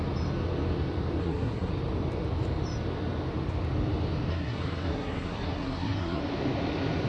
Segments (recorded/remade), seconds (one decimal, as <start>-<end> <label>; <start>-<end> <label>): 0.0-1.2 recorded; 1.2-1.7 remade; 1.7-4.3 recorded; 4.3-6.2 remade; 6.2-7.1 recorded